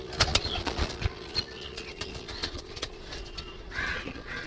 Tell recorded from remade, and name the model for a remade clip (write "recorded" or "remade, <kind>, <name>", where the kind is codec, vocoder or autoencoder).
remade, vocoder, Vocos